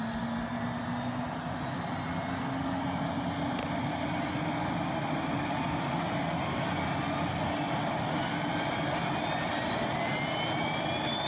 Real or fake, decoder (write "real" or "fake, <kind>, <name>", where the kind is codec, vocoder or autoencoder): real